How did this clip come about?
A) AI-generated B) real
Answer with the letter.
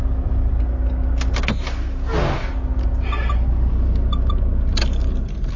B